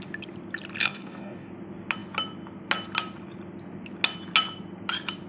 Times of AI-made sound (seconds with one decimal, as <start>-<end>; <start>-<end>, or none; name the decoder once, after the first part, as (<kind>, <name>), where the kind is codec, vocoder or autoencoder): 0.8-1.5 (codec, DAC)